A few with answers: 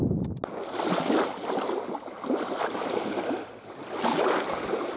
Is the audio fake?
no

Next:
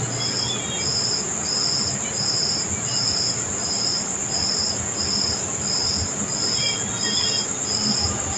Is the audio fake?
no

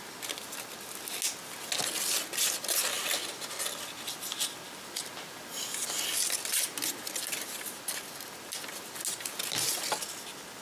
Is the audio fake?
no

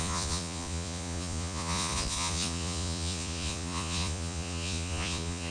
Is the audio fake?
yes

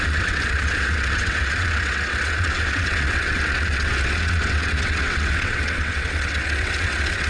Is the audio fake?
yes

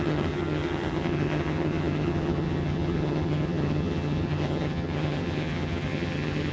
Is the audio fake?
yes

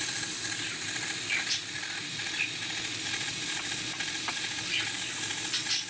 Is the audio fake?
no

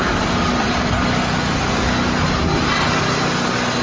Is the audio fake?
no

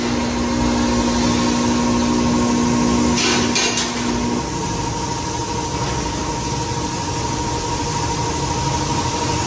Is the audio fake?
no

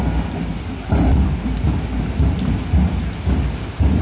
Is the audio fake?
no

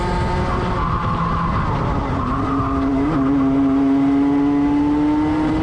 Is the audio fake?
no